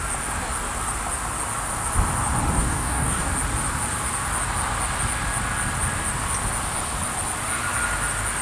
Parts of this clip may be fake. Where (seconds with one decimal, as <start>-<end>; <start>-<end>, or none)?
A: 2.6-3.3